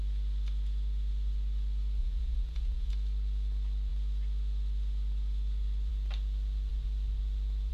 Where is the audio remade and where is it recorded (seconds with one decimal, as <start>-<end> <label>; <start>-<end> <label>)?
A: 0.0-2.0 recorded; 2.0-2.9 remade; 2.9-7.7 recorded